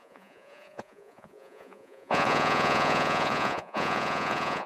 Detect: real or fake fake